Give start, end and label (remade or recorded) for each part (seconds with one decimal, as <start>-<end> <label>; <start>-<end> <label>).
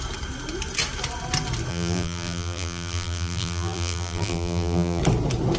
0.0-1.7 recorded; 1.7-5.0 remade; 5.0-5.6 recorded